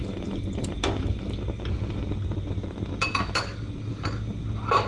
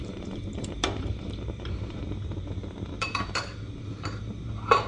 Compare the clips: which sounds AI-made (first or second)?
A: second